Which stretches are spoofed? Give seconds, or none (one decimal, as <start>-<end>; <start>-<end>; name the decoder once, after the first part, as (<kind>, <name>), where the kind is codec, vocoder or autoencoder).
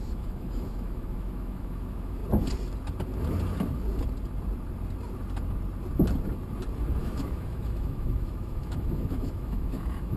0.0-2.2 (autoencoder, DAC-VAE); 7.0-10.2